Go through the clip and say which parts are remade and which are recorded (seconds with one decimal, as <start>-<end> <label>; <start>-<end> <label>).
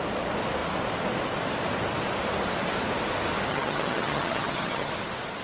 0.0-3.5 recorded; 3.5-4.9 remade; 4.9-5.4 recorded